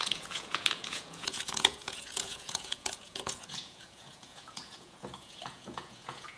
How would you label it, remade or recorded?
remade